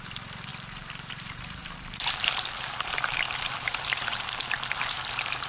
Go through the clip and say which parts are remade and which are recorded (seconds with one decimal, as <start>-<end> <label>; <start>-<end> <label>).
0.0-5.5 remade